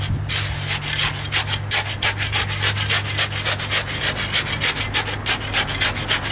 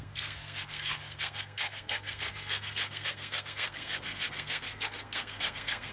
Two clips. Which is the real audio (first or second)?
first